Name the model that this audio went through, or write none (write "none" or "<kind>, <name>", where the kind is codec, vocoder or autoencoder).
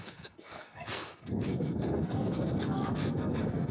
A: codec, SNAC